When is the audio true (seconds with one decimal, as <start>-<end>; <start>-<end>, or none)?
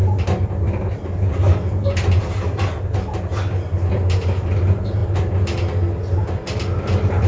0.0-7.3